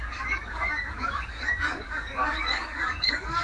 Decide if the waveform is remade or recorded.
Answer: remade